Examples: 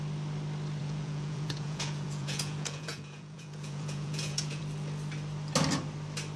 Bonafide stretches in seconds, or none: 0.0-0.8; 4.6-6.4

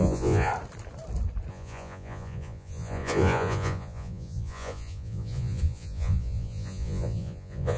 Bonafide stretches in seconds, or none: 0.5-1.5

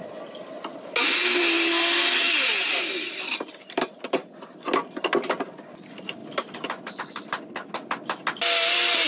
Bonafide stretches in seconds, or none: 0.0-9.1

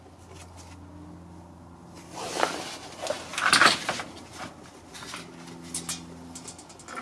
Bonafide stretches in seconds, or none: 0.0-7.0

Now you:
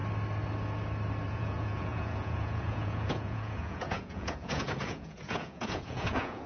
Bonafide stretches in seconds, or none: 0.0-1.3

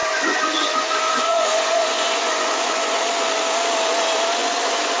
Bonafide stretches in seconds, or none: 3.0-4.4

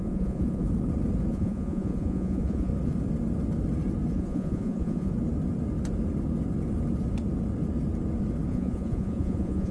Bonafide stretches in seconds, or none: 0.6-1.3; 2.7-4.1; 5.1-8.5

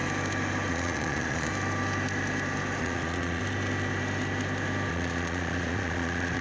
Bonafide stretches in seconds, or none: 0.0-0.7; 1.5-2.8; 3.4-4.9